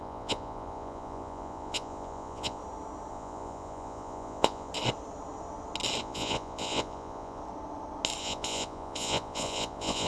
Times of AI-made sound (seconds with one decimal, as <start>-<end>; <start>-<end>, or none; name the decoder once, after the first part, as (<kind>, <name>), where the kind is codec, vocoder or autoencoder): 0.0-2.6 (vocoder, Vocos); 3.1-4.7; 6.0-7.4; 8.2-10.1